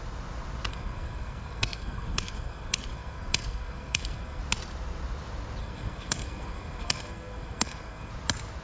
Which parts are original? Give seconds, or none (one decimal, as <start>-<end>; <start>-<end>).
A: 0.0-0.7; 4.4-5.6; 8.1-8.6